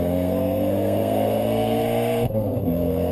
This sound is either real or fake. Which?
fake